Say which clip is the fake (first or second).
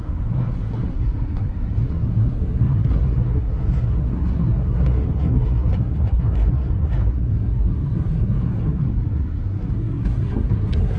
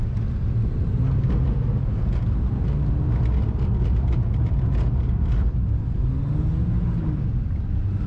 first